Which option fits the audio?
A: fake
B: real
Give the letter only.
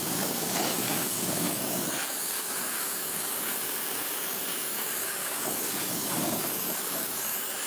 A